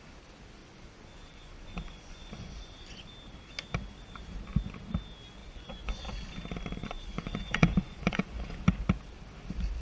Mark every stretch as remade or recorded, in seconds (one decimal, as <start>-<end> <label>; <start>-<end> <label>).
0.0-0.6 recorded; 0.6-3.1 remade; 3.1-5.4 recorded; 5.4-6.0 remade; 6.0-6.8 recorded; 6.8-8.6 remade; 8.6-9.8 recorded